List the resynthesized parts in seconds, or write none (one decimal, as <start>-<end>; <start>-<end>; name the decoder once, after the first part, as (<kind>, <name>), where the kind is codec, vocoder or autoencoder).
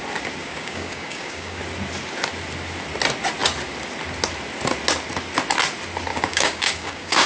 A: 0.4-1.6 (codec, DAC); 6.1-7.3